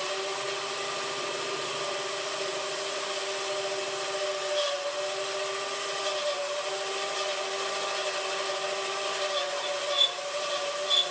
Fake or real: real